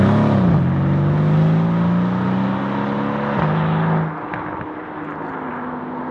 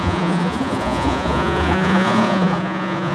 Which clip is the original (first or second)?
first